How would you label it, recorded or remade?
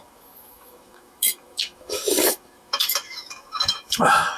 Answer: remade